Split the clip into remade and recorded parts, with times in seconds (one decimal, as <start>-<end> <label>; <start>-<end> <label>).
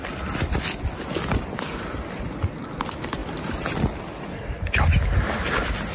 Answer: 0.0-5.9 recorded